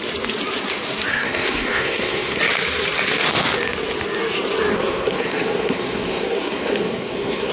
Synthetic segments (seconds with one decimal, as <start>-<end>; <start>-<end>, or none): 1.1-2.4; 4.7-7.5